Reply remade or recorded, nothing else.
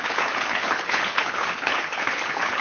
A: remade